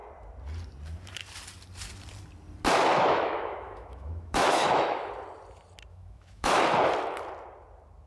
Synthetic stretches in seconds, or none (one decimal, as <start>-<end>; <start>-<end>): 2.9-5.1; 5.9-6.6